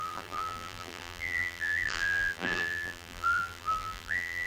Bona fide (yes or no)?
no